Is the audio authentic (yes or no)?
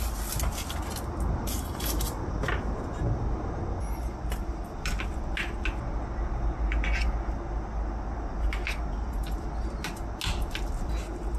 yes